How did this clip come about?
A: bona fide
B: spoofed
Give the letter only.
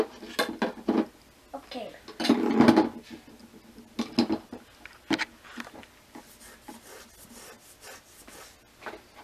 A